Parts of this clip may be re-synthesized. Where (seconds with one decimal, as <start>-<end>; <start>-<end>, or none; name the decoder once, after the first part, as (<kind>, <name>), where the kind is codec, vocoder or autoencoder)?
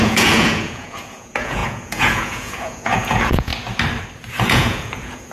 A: 0.0-3.5 (vocoder, Vocos); 4.4-5.3